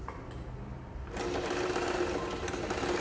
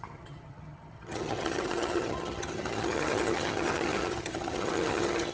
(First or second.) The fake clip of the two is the second